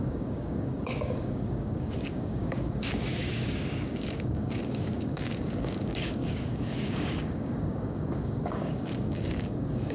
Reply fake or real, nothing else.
fake